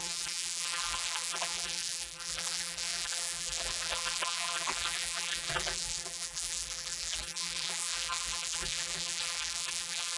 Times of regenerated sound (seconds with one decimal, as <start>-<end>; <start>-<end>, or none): 0.0-10.2